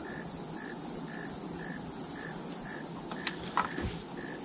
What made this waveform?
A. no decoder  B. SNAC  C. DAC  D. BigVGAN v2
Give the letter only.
A